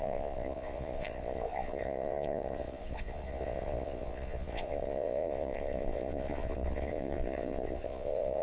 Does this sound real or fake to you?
fake